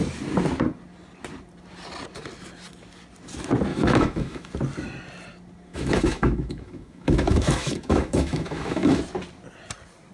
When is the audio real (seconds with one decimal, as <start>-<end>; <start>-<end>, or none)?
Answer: 0.0-3.7; 4.5-5.7; 9.0-10.1